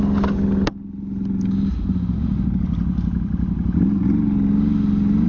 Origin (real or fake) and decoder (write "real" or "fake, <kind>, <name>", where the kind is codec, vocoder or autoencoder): real